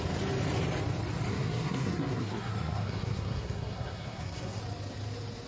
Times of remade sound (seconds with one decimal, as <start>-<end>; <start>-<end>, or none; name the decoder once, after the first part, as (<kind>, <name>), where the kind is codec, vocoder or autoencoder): 1.3-4.6 (codec, SNAC)